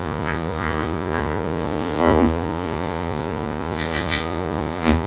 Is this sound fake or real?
fake